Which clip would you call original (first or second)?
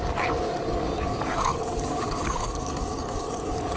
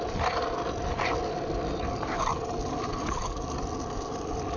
second